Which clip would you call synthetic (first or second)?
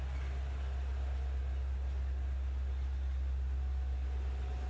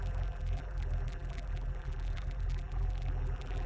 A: second